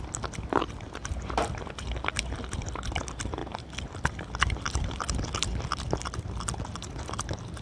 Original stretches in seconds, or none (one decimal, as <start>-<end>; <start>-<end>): 0.0-7.6